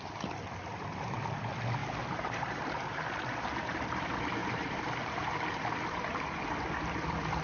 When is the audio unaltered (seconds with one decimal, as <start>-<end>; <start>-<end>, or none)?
0.0-1.8; 3.0-4.4; 5.3-7.4